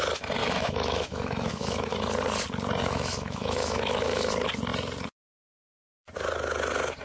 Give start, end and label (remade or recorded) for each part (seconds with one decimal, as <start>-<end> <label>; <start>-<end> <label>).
0.0-0.4 recorded; 0.4-1.9 remade; 1.9-2.8 recorded; 2.8-4.3 remade; 4.3-7.0 recorded

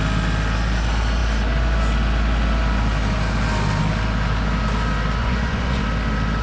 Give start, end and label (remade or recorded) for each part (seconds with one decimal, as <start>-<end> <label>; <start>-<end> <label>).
0.0-5.2 recorded; 5.2-5.8 remade; 5.8-6.4 recorded

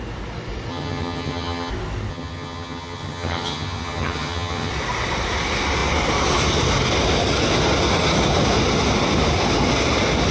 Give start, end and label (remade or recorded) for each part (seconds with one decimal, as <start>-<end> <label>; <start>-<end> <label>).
0.0-0.7 recorded; 0.7-1.7 remade; 1.7-2.1 recorded; 2.1-4.7 remade; 4.7-10.3 recorded